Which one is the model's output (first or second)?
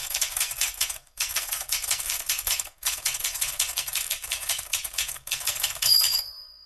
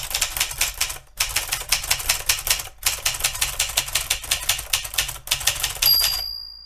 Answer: first